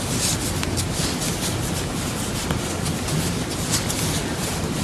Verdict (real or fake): real